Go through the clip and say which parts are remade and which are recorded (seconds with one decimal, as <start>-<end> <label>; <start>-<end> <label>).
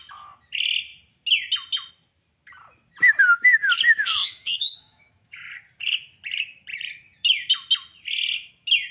0.0-4.2 recorded; 4.2-5.5 remade; 5.5-8.9 recorded